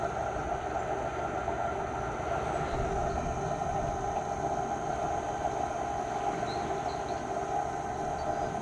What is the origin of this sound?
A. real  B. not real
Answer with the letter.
A